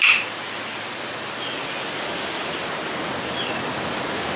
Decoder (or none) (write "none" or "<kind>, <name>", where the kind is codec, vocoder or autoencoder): none